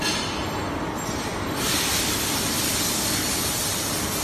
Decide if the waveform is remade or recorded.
recorded